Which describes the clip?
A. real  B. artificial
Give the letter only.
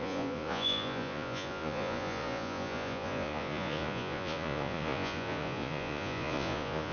B